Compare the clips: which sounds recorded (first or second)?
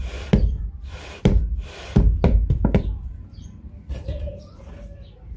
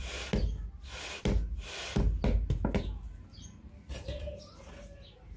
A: second